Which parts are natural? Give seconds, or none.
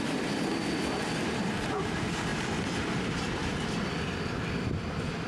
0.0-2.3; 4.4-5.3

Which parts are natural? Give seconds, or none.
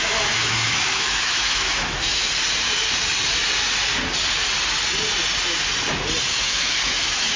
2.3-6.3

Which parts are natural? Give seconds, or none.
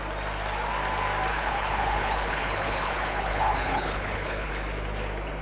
0.0-1.3; 4.5-5.4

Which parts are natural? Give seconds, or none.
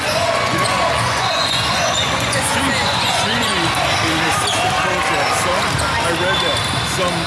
3.5-7.3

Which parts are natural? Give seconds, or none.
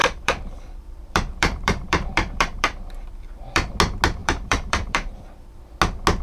3.7-4.2; 5.6-6.2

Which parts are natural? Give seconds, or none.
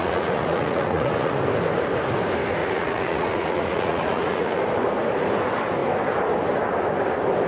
1.4-2.6; 4.6-7.5